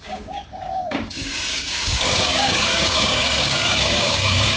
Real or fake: fake